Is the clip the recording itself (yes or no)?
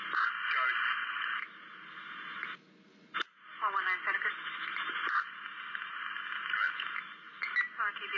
yes